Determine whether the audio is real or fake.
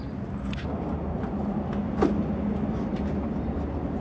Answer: real